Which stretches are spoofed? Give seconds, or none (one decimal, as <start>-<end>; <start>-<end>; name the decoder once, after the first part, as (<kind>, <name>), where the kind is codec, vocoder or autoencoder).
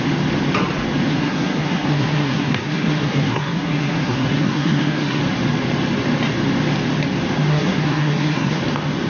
1.1-5.2 (codec, SNAC); 7.5-8.6